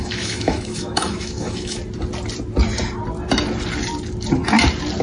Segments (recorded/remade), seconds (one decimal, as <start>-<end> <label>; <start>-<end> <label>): 0.0-1.8 remade; 1.8-5.0 recorded